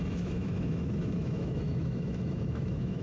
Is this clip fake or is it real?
fake